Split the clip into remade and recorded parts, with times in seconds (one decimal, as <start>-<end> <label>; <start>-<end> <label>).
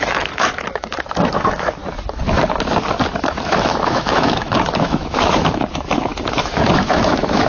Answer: 0.0-1.8 remade; 1.8-3.2 recorded; 3.2-7.5 remade